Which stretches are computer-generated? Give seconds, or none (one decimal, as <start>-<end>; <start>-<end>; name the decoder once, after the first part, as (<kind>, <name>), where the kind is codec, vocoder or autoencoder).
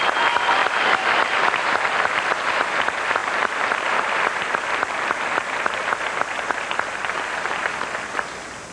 none